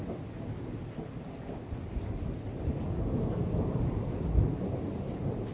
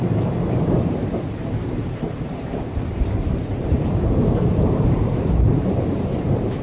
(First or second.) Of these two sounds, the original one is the first